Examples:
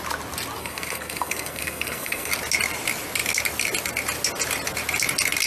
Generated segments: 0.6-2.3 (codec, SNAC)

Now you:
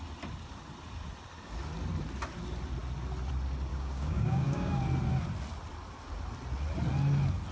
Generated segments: 3.7-4.8 (codec, DAC)

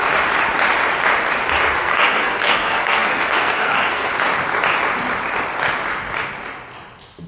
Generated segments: 1.8-4.1 (codec, SNAC)

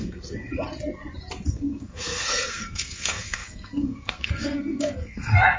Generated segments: 0.0-0.5 (codec, SNAC); 1.5-5.6

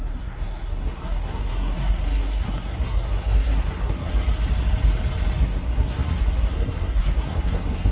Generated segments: 0.0-4.1 (codec, SNAC); 5.4-7.9

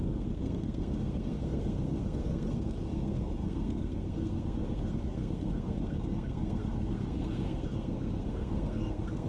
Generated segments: 0.0-9.3 (codec, SNAC)